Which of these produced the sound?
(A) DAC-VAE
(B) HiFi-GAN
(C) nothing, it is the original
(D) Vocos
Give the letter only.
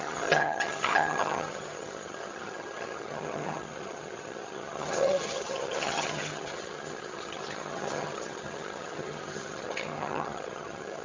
B